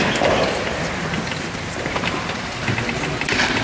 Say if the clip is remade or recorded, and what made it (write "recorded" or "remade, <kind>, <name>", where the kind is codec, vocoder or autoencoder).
recorded